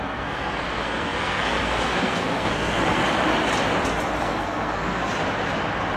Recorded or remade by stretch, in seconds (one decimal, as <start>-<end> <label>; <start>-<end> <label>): 0.0-3.0 remade; 3.0-4.2 recorded; 4.2-5.1 remade; 5.1-6.0 recorded